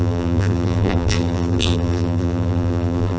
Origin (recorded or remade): remade